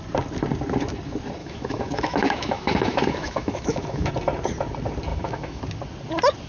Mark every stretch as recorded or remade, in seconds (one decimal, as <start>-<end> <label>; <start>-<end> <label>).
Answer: 0.0-1.4 recorded; 1.4-4.1 remade; 4.1-5.1 recorded; 5.1-5.6 remade; 5.6-6.5 recorded